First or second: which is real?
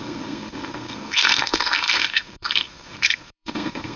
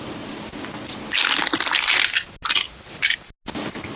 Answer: second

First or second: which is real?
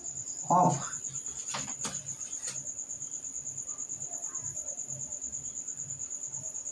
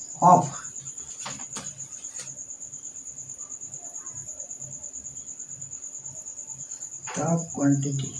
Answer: first